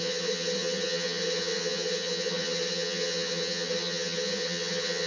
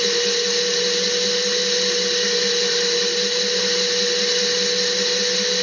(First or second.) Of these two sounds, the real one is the second